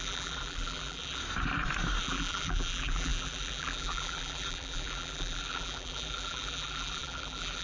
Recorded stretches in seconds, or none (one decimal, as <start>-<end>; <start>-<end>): 1.2-2.0

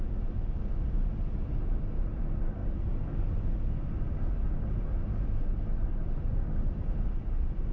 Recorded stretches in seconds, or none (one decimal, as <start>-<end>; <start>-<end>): 0.0-7.7

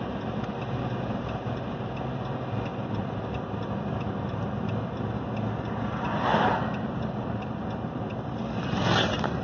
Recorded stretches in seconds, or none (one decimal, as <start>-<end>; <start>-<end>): 0.0-2.7; 3.8-6.3; 8.4-9.4